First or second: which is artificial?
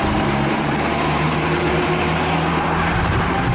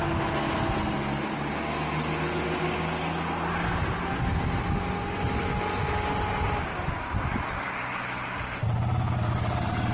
first